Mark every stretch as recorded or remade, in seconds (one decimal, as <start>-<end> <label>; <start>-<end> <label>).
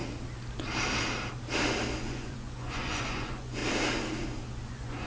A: 0.0-2.0 recorded; 2.0-3.6 remade; 3.6-4.6 recorded; 4.6-5.1 remade